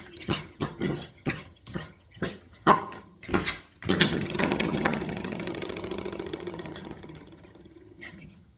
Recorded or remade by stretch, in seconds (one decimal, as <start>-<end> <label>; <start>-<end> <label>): 0.0-3.3 remade; 3.3-4.0 recorded; 4.0-8.6 remade